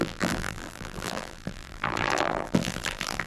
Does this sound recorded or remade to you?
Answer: remade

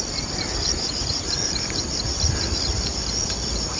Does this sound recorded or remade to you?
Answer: remade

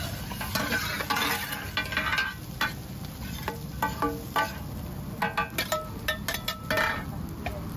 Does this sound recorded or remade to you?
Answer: recorded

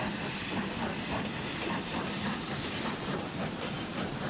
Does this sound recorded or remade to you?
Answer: recorded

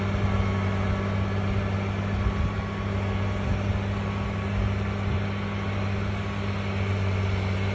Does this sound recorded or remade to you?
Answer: recorded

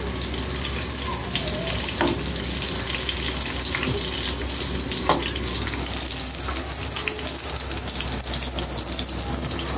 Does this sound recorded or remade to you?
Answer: recorded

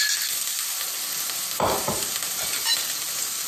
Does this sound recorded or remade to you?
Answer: recorded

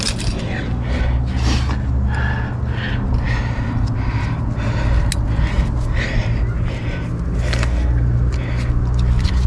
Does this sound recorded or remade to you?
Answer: recorded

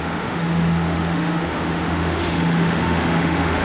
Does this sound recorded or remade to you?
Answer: remade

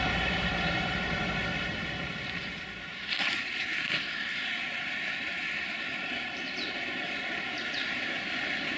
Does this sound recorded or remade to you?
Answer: remade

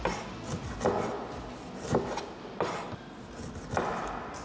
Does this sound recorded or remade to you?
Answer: recorded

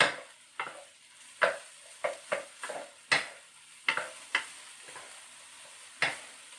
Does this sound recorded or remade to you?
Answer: recorded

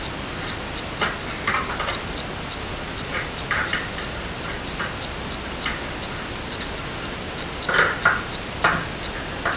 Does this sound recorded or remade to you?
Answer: recorded